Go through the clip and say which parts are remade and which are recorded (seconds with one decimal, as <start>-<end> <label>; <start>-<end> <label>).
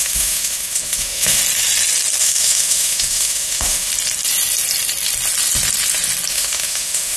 0.0-1.4 remade; 1.4-2.2 recorded; 2.2-3.9 remade; 3.9-6.3 recorded; 6.3-7.2 remade